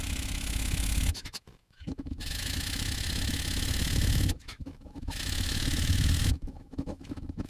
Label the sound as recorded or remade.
remade